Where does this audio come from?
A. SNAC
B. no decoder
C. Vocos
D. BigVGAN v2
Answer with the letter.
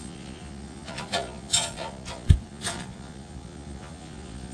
C